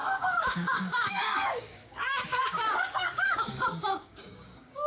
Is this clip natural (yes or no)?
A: no